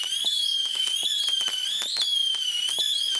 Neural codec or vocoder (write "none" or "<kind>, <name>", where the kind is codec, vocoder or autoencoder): vocoder, BigVGAN v2